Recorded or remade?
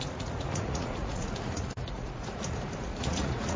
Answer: remade